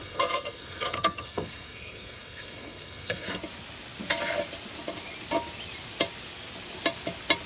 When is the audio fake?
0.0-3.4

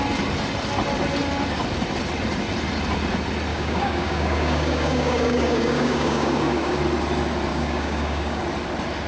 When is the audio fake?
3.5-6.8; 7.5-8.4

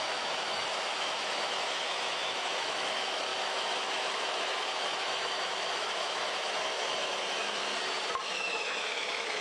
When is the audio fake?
0.0-7.6; 8.2-9.4

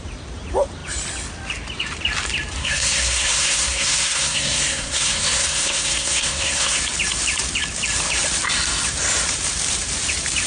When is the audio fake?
2.6-6.8

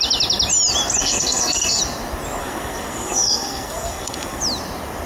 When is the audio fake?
1.0-1.8; 2.4-4.4

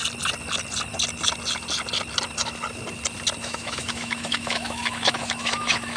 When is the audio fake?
3.4-6.0

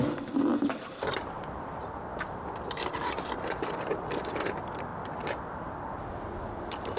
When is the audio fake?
0.0-4.2; 4.9-5.5